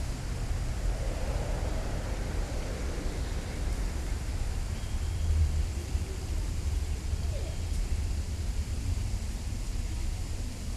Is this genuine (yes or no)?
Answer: no